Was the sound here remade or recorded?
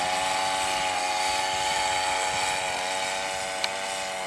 recorded